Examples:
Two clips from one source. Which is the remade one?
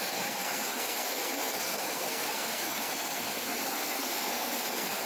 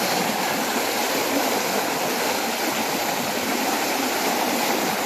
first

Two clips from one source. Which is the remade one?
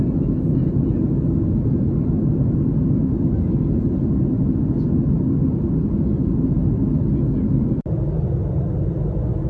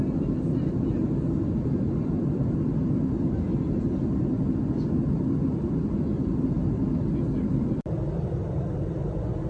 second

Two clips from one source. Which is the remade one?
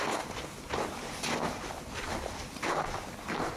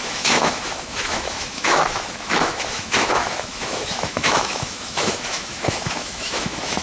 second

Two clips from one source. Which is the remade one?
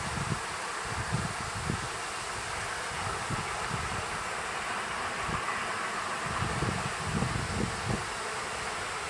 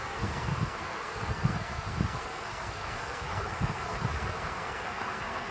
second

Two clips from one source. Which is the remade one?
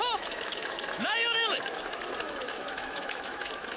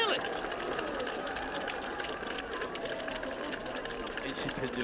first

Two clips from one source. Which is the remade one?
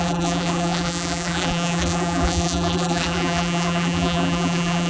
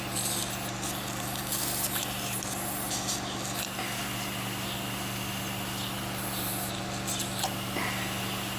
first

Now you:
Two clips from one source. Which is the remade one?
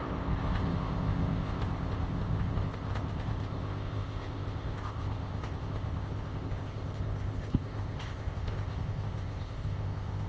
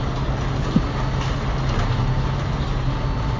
first